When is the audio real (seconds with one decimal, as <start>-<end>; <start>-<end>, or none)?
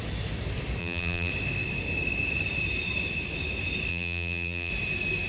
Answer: 0.0-0.8; 1.3-3.9; 4.7-5.3